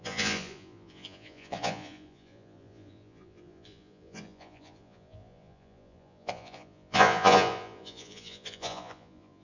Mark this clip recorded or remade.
remade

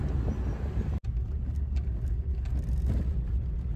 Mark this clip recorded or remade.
recorded